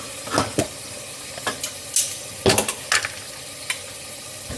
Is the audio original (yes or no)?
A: yes